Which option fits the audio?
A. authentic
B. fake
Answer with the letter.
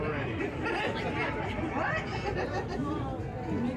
A